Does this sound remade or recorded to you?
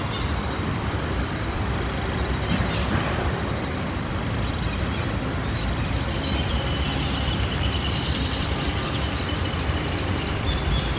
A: remade